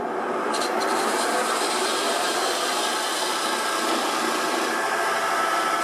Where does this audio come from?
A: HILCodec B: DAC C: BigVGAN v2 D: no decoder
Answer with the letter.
C